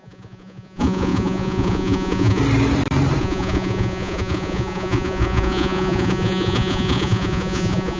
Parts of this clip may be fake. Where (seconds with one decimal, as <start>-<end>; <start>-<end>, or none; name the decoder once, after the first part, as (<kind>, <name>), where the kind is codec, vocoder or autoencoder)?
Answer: 0.0-2.4 (vocoder, Vocos); 3.2-8.0